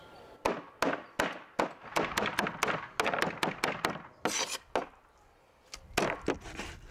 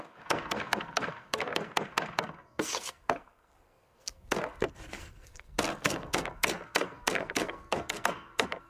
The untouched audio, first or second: first